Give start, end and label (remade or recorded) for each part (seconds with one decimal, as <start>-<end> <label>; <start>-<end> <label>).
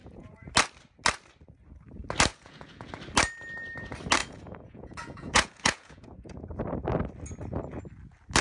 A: 0.0-0.5 remade; 0.5-2.3 recorded; 2.3-2.9 remade; 2.9-4.2 recorded; 4.2-6.4 remade; 6.4-8.4 recorded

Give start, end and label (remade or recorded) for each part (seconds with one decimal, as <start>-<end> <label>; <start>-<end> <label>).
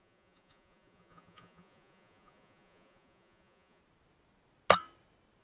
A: 0.0-3.8 remade; 3.8-5.4 recorded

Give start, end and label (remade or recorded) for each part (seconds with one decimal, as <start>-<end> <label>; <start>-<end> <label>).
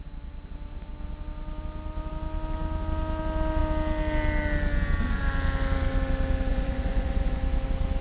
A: 0.0-6.5 recorded; 6.5-7.4 remade; 7.4-8.0 recorded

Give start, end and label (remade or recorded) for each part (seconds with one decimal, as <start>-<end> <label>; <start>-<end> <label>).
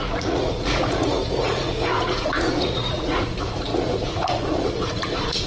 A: 0.0-5.5 remade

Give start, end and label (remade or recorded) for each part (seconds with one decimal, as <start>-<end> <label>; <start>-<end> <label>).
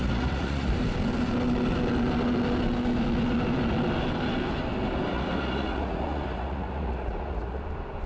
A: 0.0-0.7 remade; 0.7-5.1 recorded; 5.1-7.6 remade; 7.6-8.1 recorded